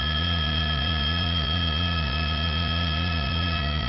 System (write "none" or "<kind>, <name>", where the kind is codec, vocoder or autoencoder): vocoder, Vocos